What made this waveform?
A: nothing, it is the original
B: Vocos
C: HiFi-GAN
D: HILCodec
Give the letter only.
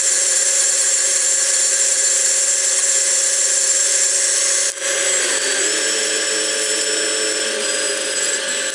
A